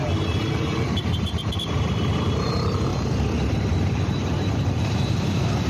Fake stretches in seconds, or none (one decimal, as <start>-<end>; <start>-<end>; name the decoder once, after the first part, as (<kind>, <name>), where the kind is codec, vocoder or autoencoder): 1.0-1.5 (vocoder, BigVGAN v2); 2.9-5.7